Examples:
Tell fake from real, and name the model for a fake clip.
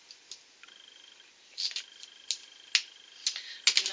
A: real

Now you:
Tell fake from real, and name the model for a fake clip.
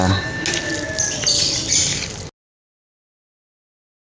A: real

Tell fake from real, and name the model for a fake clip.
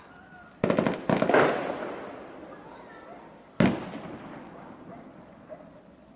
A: real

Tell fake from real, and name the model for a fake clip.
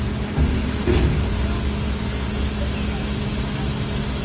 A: real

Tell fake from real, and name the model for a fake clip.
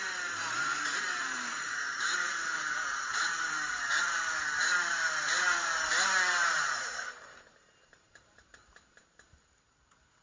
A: fake, vocoder, BigVGAN v2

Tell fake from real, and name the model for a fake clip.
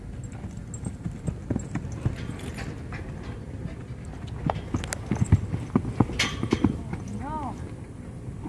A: real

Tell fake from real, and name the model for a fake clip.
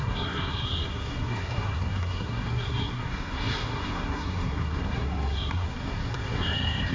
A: fake, codec, SNAC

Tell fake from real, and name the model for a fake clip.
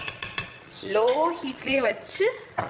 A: fake, vocoder, Vocos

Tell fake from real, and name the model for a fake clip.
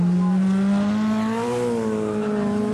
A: real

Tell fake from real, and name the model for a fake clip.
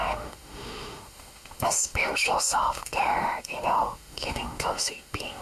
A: fake, autoencoder, DAC-VAE